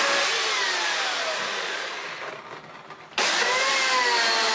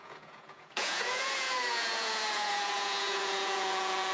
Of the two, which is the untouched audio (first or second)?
first